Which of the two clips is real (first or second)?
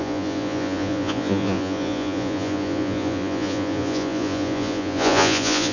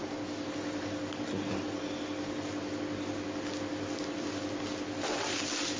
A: second